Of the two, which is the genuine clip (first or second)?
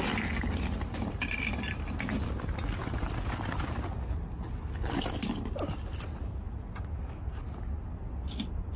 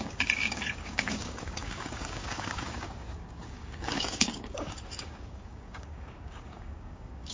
first